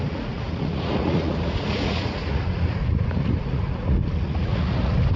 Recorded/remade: remade